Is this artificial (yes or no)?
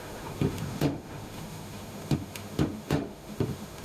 yes